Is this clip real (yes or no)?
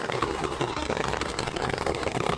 no